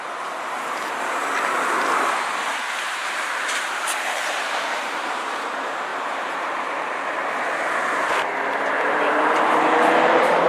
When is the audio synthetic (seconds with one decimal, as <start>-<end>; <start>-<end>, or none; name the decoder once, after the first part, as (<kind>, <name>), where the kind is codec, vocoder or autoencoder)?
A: 0.0-1.2 (vocoder, BigVGAN v2); 2.5-7.2; 8.5-10.5